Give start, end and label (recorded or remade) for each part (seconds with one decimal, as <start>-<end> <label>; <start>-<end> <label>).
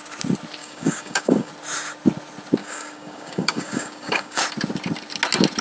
0.0-0.6 recorded; 0.6-1.5 remade; 1.5-2.6 recorded; 2.6-4.4 remade; 4.4-5.6 recorded